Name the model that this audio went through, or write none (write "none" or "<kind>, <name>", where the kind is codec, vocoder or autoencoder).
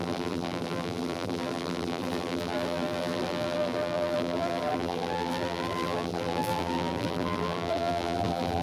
vocoder, BigVGAN v2